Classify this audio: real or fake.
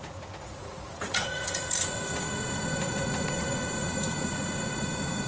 fake